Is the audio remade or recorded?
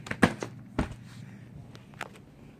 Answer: recorded